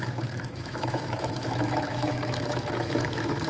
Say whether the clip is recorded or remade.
remade